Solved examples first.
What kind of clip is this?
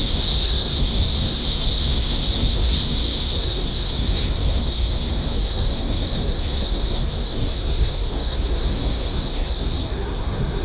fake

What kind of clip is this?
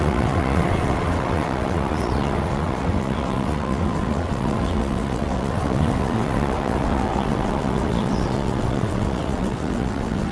fake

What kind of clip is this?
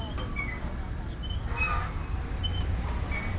real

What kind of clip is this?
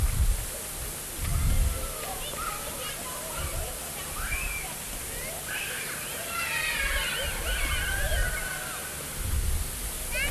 real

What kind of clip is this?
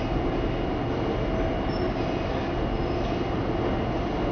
real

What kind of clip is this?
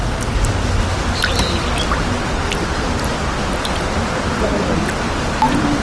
real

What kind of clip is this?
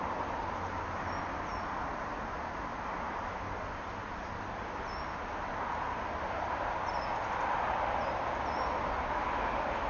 real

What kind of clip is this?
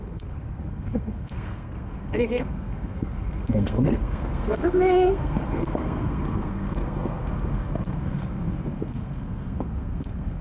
fake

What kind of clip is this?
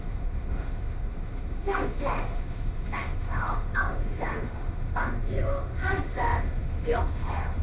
fake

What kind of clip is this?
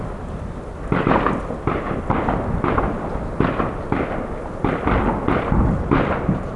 real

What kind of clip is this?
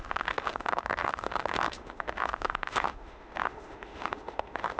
fake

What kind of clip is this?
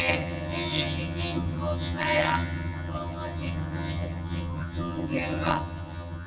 fake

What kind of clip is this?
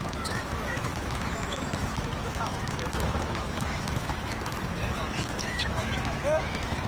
fake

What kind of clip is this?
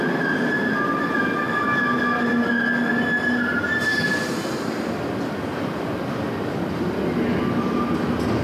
real